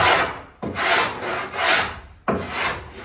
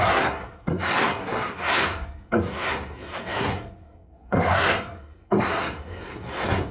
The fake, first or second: second